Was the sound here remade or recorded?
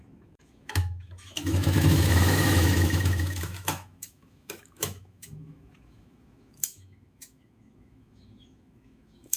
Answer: remade